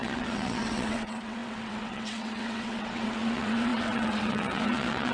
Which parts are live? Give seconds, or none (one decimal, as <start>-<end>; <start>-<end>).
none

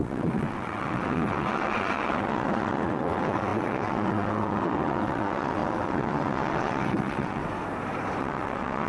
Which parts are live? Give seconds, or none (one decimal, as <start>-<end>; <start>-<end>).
7.4-8.2

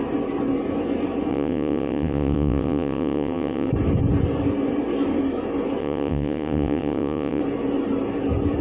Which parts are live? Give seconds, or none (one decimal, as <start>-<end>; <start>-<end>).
0.0-1.3; 3.7-5.8; 7.4-8.6